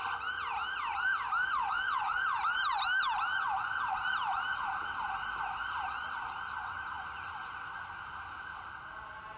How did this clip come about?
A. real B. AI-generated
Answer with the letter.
A